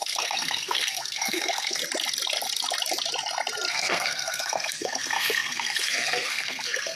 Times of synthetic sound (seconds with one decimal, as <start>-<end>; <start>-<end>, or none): 0.0-1.8; 3.7-7.0